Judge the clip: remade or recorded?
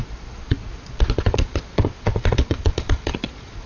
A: remade